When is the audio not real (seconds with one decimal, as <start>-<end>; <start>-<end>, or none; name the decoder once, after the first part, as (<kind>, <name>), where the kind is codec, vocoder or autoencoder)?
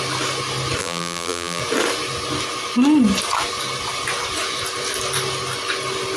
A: 0.8-1.6 (vocoder, BigVGAN v2)